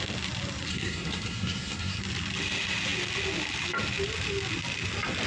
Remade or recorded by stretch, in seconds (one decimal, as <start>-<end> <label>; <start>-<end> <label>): 0.0-0.7 recorded; 0.7-2.0 remade; 2.0-5.3 recorded